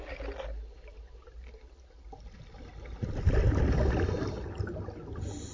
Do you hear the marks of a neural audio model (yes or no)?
no